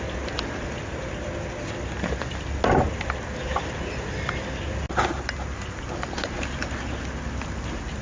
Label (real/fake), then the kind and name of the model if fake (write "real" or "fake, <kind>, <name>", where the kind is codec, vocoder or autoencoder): real